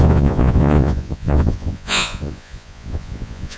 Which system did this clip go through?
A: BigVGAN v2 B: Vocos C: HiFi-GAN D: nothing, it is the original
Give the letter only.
B